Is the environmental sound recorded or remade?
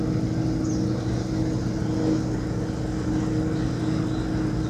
recorded